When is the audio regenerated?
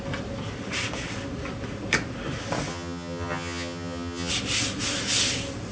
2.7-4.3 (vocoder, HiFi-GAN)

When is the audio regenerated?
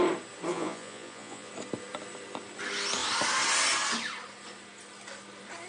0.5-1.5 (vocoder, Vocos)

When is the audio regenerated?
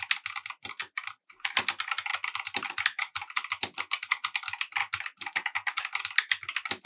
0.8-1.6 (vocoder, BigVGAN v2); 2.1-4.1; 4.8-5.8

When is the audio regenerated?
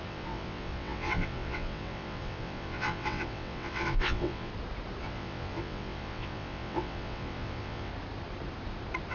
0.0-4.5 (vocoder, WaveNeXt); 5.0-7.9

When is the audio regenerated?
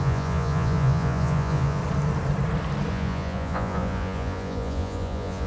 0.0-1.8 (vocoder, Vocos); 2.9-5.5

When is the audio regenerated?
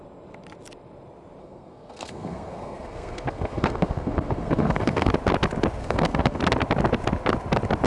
1.4-5.1 (codec, SNAC); 5.8-6.4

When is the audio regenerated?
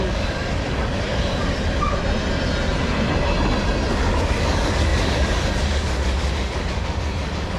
0.0-1.4 (codec, DAC); 3.9-7.6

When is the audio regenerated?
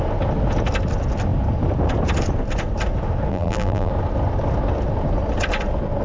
3.3-3.9 (vocoder, BigVGAN v2)